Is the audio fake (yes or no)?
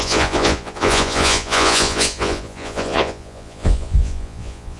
yes